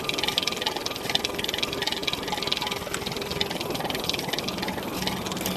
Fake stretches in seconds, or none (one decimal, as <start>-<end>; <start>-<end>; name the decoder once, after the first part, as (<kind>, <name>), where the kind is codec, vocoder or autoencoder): none